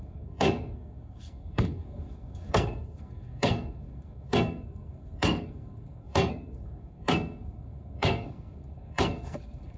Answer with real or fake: fake